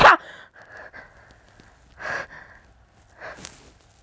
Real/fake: real